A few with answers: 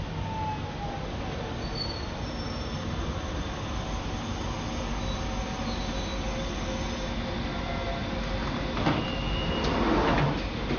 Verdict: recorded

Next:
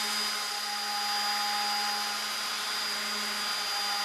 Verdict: recorded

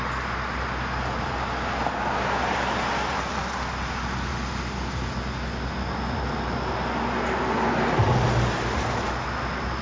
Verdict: recorded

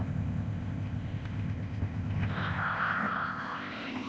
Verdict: remade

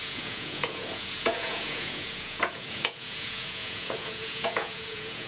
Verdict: remade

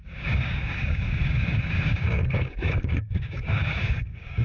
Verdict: remade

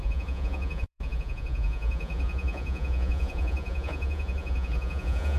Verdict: remade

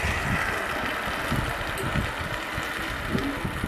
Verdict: recorded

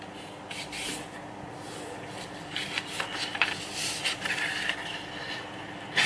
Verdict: recorded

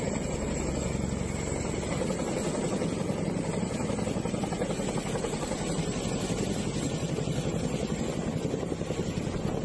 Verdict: recorded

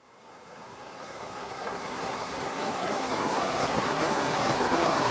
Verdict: remade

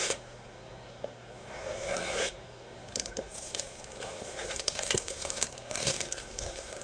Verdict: remade